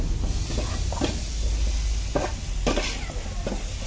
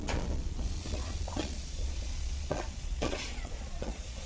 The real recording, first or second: first